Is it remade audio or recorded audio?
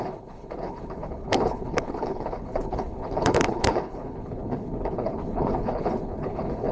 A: remade